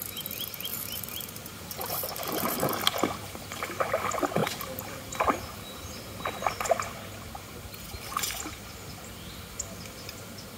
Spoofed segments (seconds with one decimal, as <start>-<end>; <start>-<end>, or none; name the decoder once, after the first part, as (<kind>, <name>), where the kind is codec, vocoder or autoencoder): 0.7-2.7 (vocoder, BigVGAN v2)